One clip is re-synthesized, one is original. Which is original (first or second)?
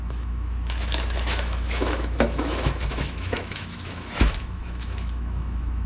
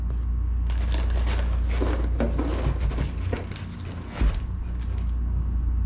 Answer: second